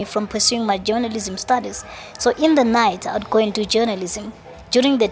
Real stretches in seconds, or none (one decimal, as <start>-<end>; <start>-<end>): 0.0-5.1